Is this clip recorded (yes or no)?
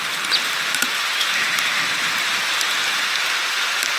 yes